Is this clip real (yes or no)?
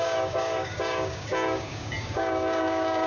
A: no